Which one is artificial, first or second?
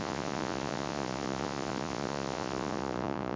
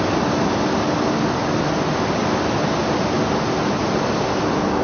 first